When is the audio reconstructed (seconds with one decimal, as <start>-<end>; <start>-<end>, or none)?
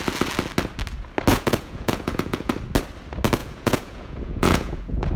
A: 1.3-2.5; 3.4-5.2